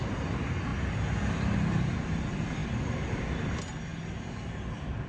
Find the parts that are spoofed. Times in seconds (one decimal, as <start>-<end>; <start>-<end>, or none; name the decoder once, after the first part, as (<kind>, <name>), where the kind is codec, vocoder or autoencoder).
none